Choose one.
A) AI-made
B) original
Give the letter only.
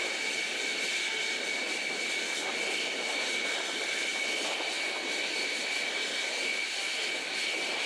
B